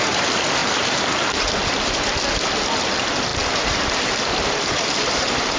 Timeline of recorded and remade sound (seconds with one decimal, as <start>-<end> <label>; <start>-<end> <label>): 0.0-0.6 recorded; 0.6-1.5 remade; 1.5-3.3 recorded; 3.3-5.6 remade